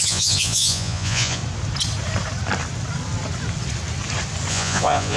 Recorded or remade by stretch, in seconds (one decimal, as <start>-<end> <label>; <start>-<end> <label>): 0.0-1.4 remade; 1.4-4.5 recorded; 4.5-5.2 remade